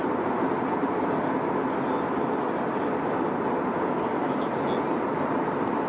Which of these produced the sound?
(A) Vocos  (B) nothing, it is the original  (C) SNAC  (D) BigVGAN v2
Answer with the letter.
B